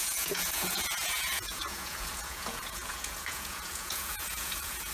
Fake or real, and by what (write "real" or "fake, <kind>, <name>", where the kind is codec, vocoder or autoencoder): fake, vocoder, Vocos